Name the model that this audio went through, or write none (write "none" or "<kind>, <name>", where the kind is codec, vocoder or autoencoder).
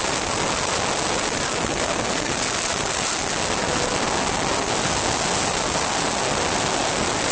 none